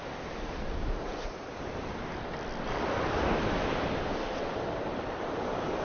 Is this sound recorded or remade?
recorded